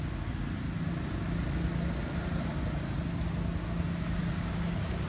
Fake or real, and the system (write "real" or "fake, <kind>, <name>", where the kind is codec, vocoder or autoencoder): real